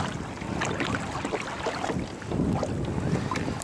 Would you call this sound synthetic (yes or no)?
no